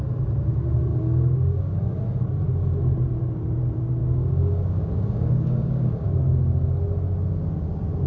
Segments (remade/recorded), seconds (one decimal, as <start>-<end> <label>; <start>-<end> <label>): 0.0-0.9 recorded; 0.9-2.0 remade; 2.0-4.0 recorded; 4.0-6.1 remade; 6.1-8.1 recorded